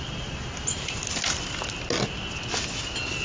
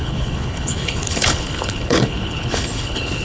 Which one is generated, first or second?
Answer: second